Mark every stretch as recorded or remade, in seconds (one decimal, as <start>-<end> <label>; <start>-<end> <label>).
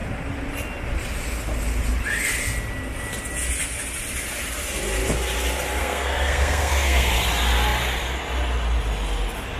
0.0-5.8 recorded; 5.8-7.1 remade; 7.1-9.6 recorded